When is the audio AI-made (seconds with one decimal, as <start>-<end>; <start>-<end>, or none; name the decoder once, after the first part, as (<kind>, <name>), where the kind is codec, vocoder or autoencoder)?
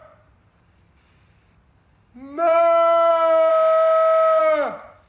3.5-4.4 (autoencoder, DAC-VAE)